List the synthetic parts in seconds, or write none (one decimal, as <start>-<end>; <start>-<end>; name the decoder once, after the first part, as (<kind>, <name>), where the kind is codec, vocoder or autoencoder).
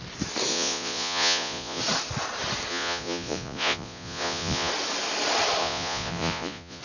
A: 0.5-1.8 (vocoder, Vocos); 2.7-4.7; 5.6-6.8